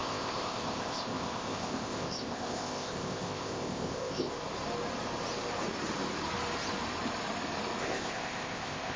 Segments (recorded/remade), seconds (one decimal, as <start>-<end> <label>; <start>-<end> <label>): 0.0-4.3 remade; 4.3-7.8 recorded; 7.8-9.0 remade